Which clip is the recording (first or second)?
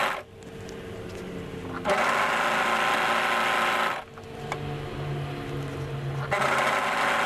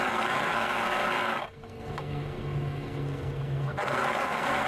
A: first